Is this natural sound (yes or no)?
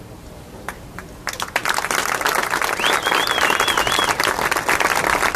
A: yes